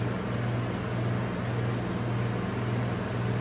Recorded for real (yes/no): yes